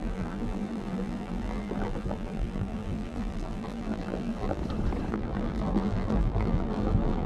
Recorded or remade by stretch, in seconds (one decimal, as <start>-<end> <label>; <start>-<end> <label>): 0.0-4.6 remade; 4.6-5.1 recorded; 5.1-7.3 remade